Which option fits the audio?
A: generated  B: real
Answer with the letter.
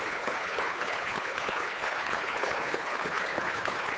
A